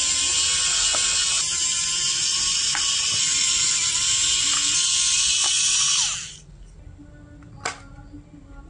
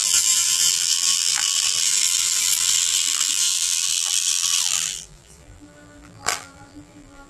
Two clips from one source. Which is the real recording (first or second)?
first